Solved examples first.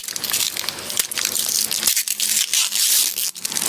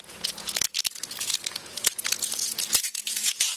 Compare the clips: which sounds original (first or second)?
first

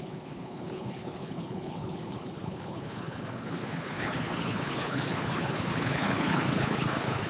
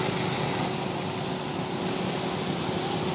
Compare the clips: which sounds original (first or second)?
second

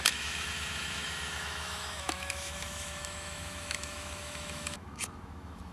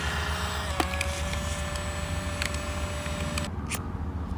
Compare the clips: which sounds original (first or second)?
second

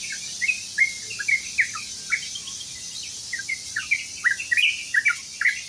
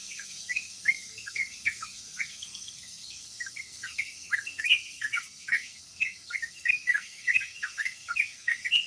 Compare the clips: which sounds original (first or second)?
first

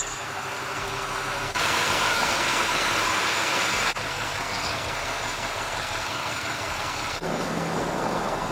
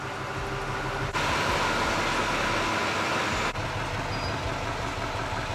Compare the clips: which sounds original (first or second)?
second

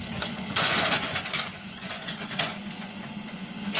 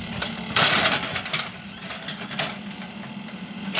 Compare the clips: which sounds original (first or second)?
second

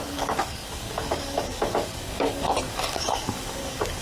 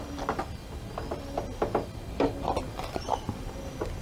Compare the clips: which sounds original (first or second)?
second